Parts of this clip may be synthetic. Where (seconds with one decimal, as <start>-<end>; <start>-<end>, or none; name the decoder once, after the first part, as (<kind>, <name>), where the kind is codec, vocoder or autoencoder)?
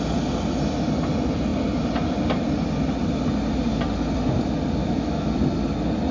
4.8-5.3 (autoencoder, DAC-VAE)